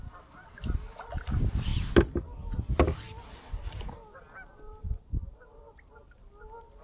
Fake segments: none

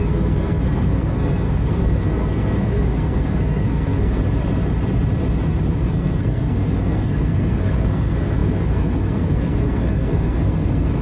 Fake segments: 0.0-4.2 (codec, SNAC); 5.7-11.0

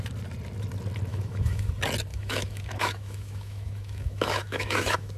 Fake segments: 1.1-1.7 (autoencoder, DAC-VAE); 2.1-5.2

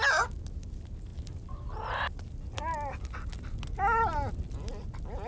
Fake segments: none

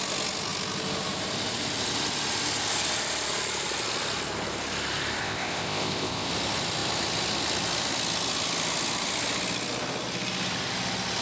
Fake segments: 5.2-6.3 (codec, ZipCodec)

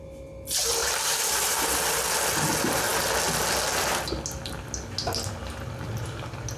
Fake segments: 0.8-1.6 (vocoder, BigVGAN v2)